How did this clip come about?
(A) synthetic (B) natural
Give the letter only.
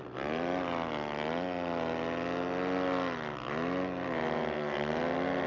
B